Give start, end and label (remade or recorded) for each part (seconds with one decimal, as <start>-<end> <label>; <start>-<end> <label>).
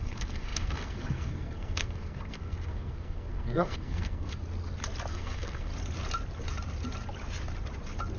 0.0-4.4 remade; 4.4-5.1 recorded; 5.1-5.7 remade; 5.7-8.2 recorded